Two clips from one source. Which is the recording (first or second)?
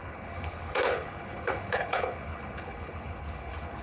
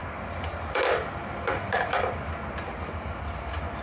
second